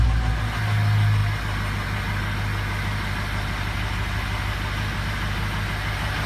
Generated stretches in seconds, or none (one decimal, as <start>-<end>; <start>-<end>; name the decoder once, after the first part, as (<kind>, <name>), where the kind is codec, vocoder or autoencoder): none